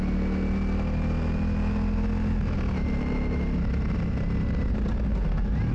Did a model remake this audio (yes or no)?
no